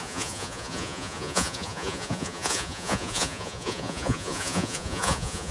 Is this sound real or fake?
fake